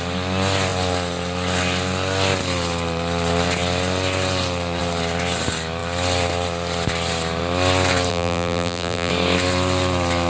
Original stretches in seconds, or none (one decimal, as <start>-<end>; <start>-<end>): 0.0-8.1; 9.1-10.3